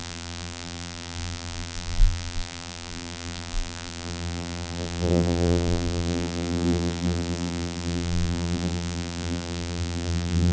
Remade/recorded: remade